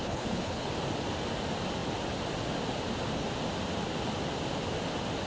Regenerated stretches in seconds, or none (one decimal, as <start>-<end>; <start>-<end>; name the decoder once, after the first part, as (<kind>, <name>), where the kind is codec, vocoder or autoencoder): 0.0-0.7 (codec, HILCodec)